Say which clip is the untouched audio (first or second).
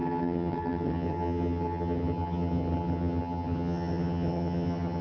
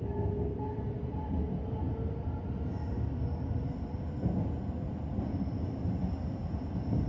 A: second